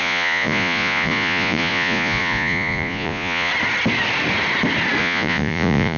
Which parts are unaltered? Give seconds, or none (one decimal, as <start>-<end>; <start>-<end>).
3.5-5.0